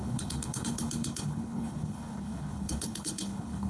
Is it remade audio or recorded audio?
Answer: remade